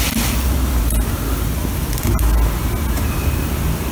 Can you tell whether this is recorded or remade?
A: recorded